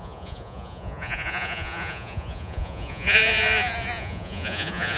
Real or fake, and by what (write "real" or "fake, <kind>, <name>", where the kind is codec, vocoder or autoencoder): fake, vocoder, Vocos